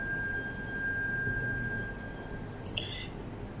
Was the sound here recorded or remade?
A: recorded